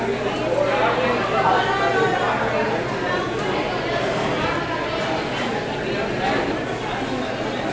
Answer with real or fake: real